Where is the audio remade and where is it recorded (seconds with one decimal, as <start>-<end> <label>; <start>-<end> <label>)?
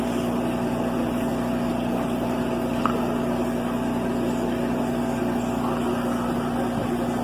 0.0-7.2 recorded